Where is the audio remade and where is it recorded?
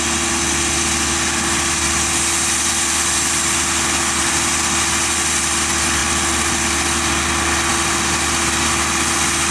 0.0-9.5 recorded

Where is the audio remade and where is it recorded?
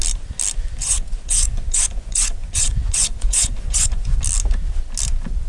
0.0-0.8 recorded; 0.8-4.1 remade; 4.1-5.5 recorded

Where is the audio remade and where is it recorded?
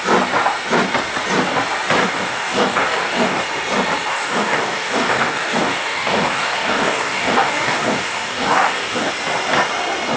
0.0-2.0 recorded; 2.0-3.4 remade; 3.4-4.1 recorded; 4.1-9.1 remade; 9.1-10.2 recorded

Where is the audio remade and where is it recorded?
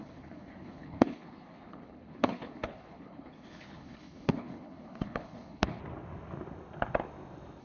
0.0-5.8 remade; 5.8-7.6 recorded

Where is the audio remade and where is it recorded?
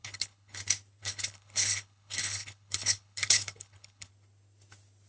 0.0-0.6 remade; 0.6-1.0 recorded; 1.0-4.1 remade; 4.1-5.1 recorded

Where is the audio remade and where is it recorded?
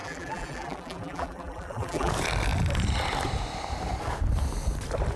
0.0-2.1 remade; 2.1-5.2 recorded